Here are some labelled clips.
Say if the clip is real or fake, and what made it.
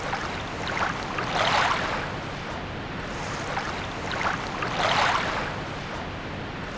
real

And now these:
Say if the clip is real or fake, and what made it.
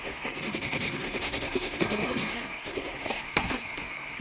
fake, codec, SNAC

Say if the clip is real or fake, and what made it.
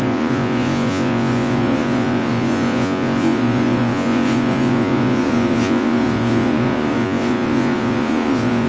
fake, vocoder, Vocos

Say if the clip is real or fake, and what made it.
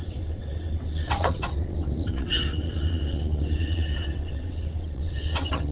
fake, vocoder, WaveNeXt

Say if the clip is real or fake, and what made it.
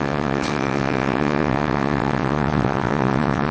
fake, vocoder, WaveNeXt